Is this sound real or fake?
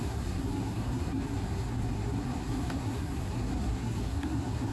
fake